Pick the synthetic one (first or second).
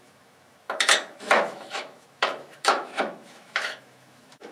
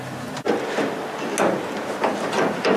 first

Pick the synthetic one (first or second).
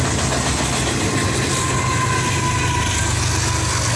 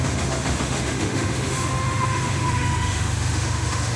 second